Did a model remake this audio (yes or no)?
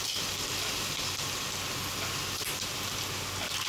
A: yes